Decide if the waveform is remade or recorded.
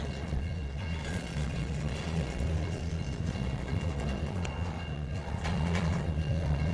remade